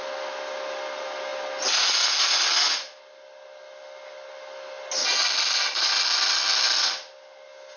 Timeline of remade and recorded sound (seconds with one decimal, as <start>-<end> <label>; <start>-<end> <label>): 0.0-7.8 recorded